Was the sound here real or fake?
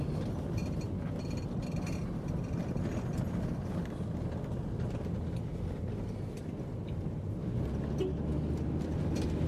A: real